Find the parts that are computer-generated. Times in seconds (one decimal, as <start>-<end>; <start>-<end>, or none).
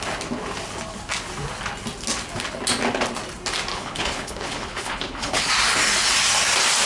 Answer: 3.7-5.5